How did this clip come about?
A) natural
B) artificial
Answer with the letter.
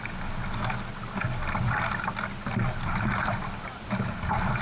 A